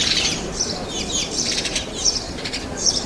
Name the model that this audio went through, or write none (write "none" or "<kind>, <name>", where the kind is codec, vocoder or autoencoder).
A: vocoder, BigVGAN v2